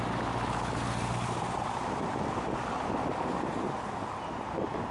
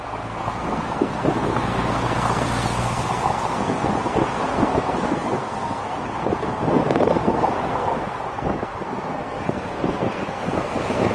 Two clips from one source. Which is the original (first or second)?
first